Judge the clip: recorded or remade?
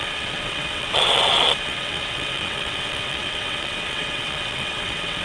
remade